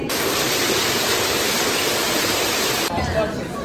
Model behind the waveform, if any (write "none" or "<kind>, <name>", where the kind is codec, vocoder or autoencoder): vocoder, BigVGAN v2